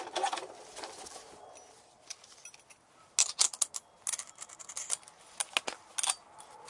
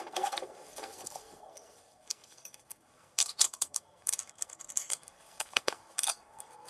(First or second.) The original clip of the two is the first